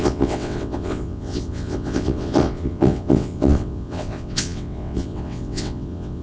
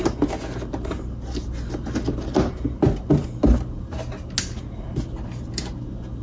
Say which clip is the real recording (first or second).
second